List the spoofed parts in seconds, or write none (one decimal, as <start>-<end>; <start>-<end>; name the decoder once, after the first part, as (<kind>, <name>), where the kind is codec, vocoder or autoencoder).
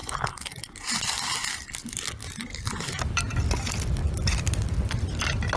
none